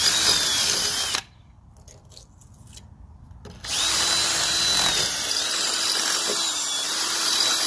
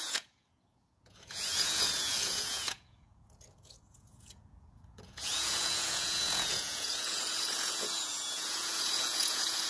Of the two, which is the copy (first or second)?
second